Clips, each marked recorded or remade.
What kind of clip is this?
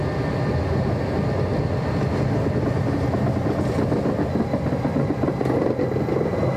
recorded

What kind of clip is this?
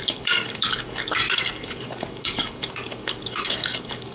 remade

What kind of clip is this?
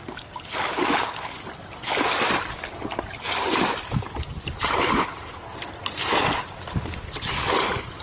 recorded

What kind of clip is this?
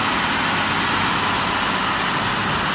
recorded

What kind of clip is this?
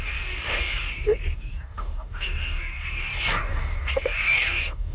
remade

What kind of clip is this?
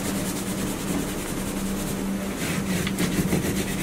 recorded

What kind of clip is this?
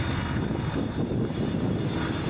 recorded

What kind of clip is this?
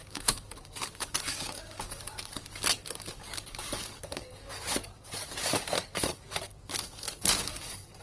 remade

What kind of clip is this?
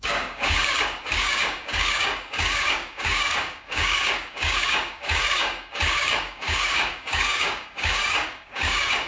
remade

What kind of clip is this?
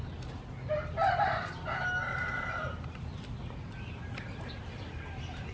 recorded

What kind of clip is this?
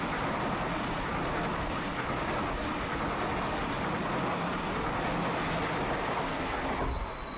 recorded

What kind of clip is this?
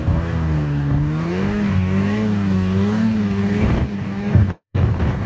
remade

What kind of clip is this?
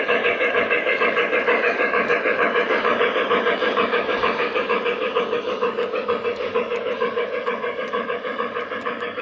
remade